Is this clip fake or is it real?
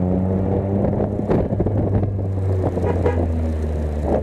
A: real